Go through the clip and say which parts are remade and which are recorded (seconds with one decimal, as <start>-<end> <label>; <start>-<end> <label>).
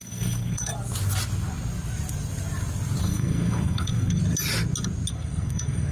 0.0-0.7 remade; 0.7-3.0 recorded; 3.0-4.2 remade; 4.2-5.1 recorded; 5.1-5.9 remade